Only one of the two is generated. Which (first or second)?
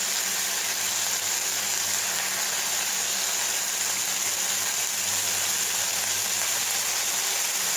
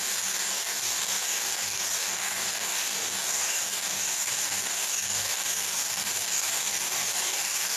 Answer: second